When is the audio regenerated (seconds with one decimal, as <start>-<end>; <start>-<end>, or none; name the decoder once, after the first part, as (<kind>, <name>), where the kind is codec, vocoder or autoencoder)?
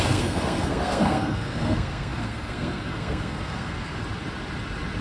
0.0-4.0 (codec, SNAC)